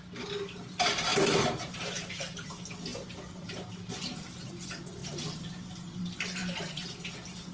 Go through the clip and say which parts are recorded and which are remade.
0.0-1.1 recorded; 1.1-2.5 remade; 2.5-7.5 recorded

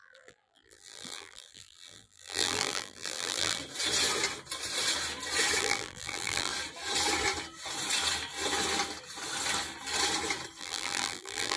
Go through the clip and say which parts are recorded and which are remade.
0.0-3.6 remade; 3.6-5.6 recorded; 5.6-6.5 remade; 6.5-10.6 recorded; 10.6-11.6 remade